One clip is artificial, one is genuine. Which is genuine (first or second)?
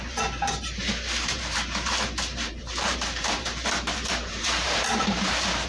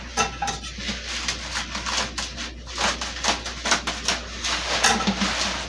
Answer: second